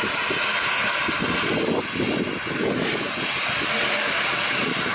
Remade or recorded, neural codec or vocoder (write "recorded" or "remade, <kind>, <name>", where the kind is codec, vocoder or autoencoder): recorded